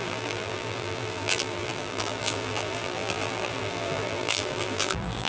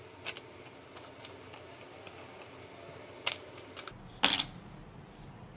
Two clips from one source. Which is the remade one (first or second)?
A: first